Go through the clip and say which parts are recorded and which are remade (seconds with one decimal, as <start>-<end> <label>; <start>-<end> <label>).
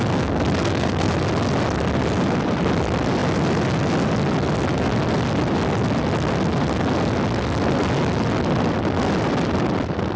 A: 0.0-0.6 recorded; 0.6-1.1 remade; 1.1-10.2 recorded